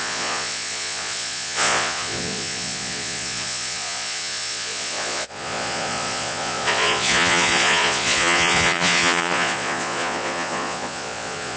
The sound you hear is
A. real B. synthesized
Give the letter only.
B